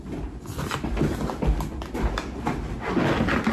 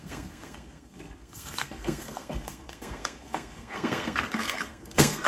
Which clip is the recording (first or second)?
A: first